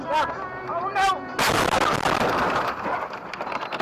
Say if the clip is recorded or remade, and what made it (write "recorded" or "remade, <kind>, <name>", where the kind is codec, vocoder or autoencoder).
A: recorded